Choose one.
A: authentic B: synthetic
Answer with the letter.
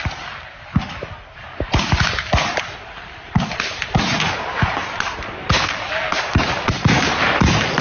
A